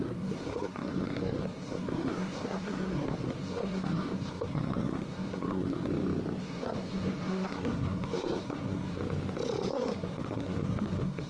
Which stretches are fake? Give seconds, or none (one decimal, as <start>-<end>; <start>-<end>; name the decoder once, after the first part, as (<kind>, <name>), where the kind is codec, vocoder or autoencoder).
0.0-5.9 (codec, SNAC); 6.4-9.0; 9.7-11.3